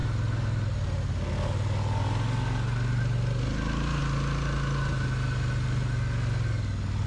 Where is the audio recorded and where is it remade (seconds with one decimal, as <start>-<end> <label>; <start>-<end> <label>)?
0.0-7.1 recorded